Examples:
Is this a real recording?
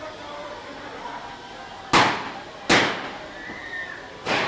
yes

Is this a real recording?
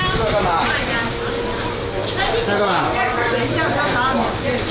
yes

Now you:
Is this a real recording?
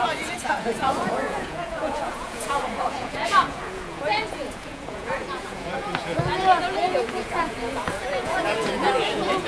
no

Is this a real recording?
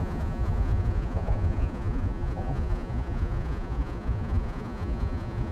no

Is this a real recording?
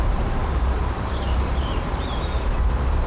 no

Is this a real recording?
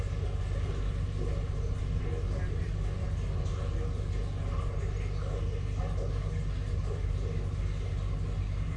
yes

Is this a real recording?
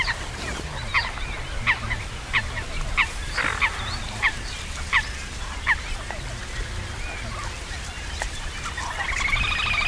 yes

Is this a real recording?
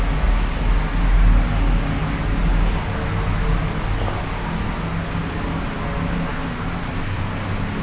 yes